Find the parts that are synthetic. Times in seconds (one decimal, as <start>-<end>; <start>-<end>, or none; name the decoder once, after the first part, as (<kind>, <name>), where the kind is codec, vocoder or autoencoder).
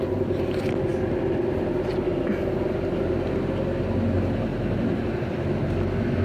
none